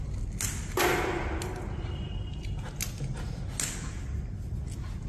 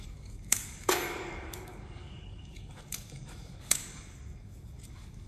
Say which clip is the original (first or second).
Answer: first